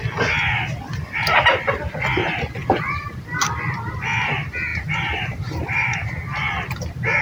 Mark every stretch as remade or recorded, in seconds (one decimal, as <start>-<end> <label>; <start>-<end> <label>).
0.0-4.7 recorded; 4.7-6.1 remade; 6.1-7.2 recorded